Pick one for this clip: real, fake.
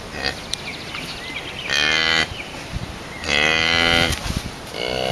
real